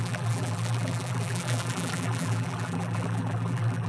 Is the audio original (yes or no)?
no